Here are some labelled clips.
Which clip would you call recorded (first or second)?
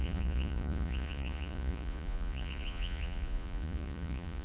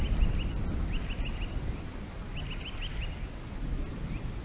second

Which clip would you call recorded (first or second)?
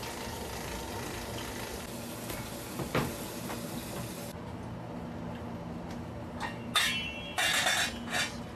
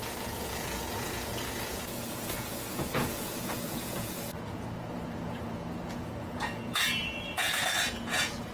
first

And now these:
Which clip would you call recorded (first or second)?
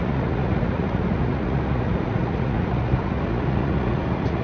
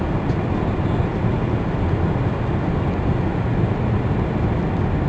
second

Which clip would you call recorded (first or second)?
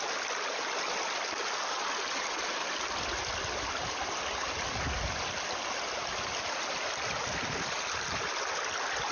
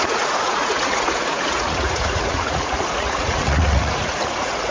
first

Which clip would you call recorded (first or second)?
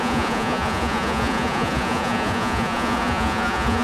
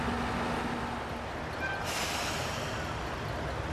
second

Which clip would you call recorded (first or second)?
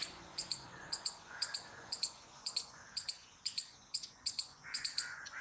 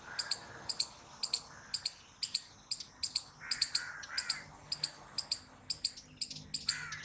second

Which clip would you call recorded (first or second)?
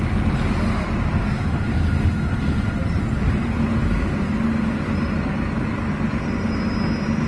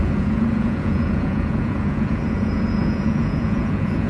first